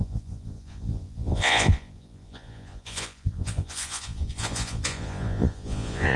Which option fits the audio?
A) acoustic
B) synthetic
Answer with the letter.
B